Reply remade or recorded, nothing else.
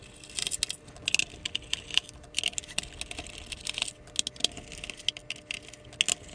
recorded